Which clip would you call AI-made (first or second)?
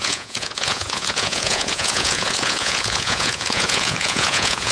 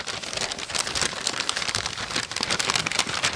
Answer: first